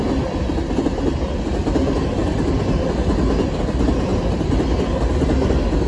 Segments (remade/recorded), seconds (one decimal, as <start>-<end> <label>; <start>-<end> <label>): 0.0-4.1 recorded; 4.1-4.6 remade; 4.6-5.9 recorded